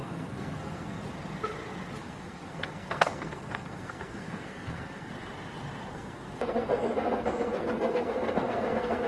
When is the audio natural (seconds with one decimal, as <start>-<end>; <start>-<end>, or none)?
1.0-2.0; 5.1-5.9